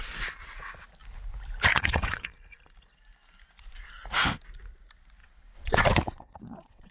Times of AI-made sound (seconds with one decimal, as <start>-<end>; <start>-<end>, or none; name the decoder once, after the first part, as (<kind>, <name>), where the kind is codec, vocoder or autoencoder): 1.7-2.3 (vocoder, WaveNeXt); 5.2-6.9